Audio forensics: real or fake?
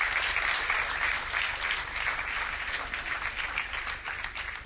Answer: real